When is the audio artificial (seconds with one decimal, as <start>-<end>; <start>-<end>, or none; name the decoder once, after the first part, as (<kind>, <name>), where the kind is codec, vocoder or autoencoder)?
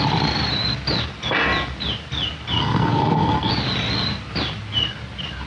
2.6-3.5 (codec, SNAC)